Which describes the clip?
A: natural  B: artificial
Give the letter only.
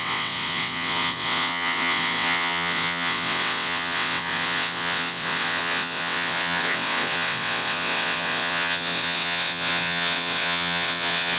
B